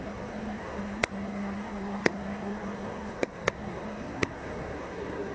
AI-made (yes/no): yes